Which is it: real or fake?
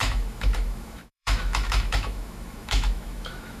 fake